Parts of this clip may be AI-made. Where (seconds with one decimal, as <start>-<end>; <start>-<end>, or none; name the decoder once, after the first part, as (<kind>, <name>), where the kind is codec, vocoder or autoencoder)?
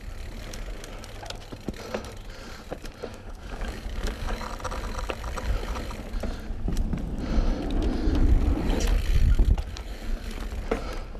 3.1-4.5 (codec, DAC)